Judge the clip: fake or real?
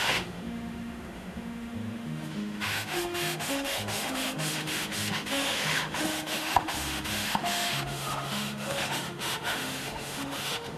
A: fake